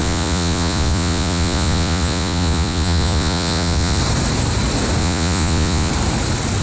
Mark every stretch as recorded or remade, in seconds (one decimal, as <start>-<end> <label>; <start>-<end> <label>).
0.0-4.0 remade; 4.0-5.0 recorded; 5.0-5.9 remade; 5.9-6.6 recorded